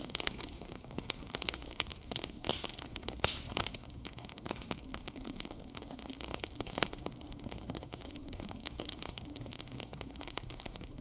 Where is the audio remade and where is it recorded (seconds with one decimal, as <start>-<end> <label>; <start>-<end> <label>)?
0.0-11.0 remade